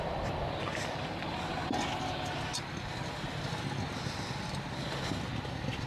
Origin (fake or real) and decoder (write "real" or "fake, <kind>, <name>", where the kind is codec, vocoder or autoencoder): real